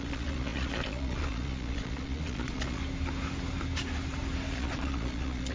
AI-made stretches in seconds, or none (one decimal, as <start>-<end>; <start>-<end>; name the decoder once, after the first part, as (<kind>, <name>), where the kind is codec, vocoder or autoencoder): 0.0-2.8 (vocoder, Vocos); 4.5-5.5